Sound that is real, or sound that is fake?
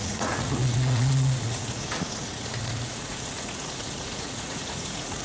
fake